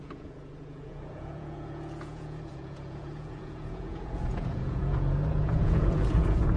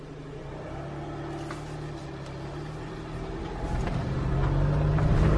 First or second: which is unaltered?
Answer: second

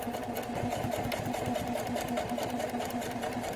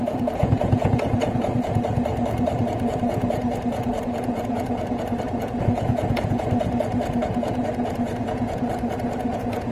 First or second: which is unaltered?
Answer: first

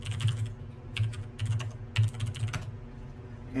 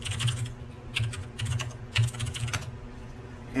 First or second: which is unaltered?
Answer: first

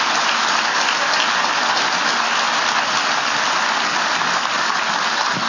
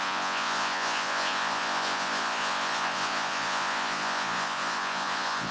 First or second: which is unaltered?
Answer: first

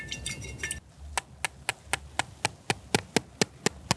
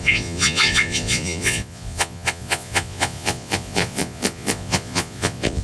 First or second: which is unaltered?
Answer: first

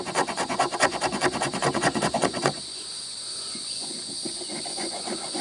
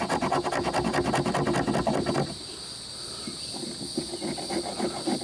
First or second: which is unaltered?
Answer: second